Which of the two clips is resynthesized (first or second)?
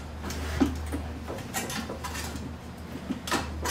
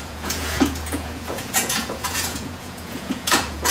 second